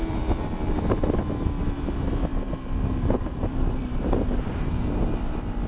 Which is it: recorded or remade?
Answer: remade